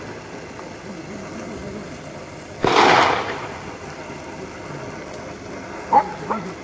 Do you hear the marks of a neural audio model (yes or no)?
yes